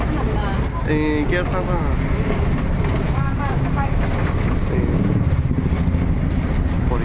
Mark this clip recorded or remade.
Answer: recorded